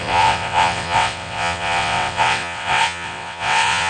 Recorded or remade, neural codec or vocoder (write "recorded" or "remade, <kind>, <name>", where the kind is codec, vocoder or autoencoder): remade, vocoder, WaveNeXt